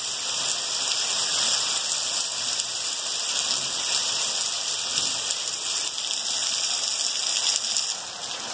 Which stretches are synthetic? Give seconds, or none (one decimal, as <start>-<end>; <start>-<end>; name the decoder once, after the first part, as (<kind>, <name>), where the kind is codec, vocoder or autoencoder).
none

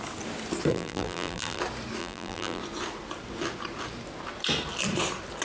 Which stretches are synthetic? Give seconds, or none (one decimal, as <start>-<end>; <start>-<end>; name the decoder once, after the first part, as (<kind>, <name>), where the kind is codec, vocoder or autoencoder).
0.7-1.6 (vocoder, BigVGAN v2); 2.0-2.6

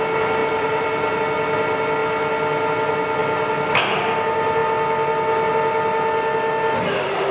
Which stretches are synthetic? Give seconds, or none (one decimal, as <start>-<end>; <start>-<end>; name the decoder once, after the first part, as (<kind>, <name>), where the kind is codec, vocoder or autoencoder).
0.4-1.2 (vocoder, BigVGAN v2)

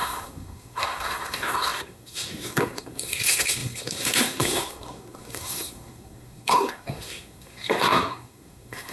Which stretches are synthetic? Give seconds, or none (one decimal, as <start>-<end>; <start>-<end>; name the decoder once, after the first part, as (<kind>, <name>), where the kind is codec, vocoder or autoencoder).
0.0-8.9 (codec, SNAC)

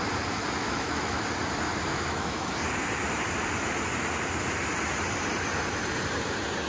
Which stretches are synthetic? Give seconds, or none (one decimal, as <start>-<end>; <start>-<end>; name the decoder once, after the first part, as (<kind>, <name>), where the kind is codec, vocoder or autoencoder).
0.6-1.2 (autoencoder, DAC-VAE); 1.9-2.5

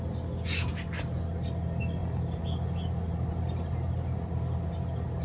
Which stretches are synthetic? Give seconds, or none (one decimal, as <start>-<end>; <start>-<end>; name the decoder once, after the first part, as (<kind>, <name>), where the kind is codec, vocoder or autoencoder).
none

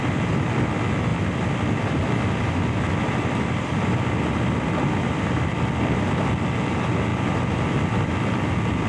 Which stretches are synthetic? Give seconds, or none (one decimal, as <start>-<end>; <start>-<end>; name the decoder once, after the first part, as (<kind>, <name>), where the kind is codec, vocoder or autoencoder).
1.1-6.0 (vocoder, BigVGAN v2); 7.1-8.1

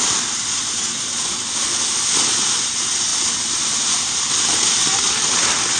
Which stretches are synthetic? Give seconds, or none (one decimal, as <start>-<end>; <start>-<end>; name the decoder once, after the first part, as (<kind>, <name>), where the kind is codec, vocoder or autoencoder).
none